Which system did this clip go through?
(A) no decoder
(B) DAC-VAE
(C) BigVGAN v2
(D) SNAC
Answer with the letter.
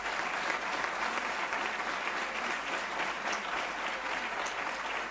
A